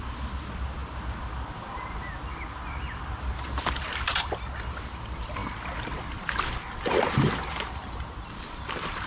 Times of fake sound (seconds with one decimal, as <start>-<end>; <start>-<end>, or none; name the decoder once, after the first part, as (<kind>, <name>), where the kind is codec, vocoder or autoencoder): none